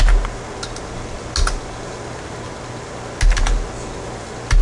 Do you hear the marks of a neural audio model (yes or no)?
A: no